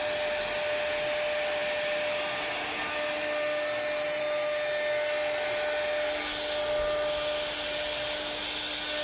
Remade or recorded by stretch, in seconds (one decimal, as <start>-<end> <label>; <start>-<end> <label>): 0.0-9.0 recorded